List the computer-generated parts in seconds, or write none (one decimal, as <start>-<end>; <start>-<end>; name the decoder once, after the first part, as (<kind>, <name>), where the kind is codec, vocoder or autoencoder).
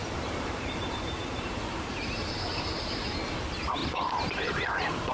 0.0-3.1 (vocoder, BigVGAN v2)